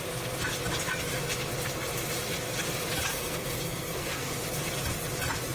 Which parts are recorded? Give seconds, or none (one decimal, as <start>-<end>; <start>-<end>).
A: 0.0-3.1; 4.4-5.5